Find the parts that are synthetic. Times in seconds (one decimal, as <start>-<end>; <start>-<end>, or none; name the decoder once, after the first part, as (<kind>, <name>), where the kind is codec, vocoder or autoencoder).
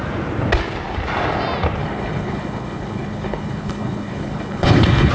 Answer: 1.8-5.1 (codec, HILCodec)